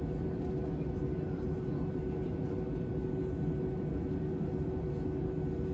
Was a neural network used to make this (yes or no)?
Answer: no